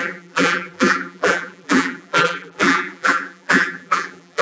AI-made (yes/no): yes